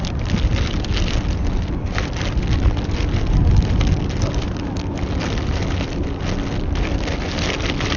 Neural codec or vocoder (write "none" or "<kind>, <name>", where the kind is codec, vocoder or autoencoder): none